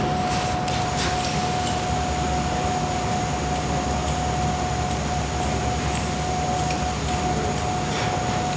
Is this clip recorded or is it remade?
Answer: recorded